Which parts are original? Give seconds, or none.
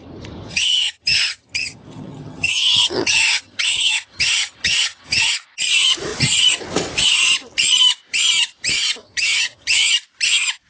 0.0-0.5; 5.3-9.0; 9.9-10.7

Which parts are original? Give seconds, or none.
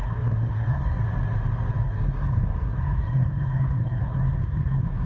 1.0-1.8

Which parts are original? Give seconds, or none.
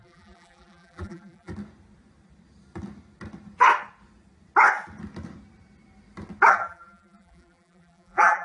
1.5-6.5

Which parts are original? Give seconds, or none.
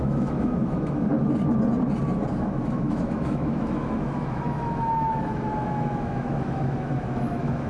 1.1-2.3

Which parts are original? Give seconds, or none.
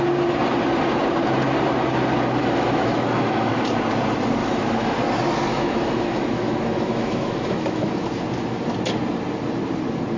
0.0-2.4; 3.5-4.4; 4.9-5.5; 7.9-10.2